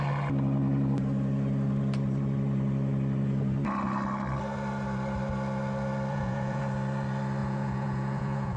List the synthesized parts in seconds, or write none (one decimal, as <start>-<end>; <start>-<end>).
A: 6.1-6.6; 7.4-8.6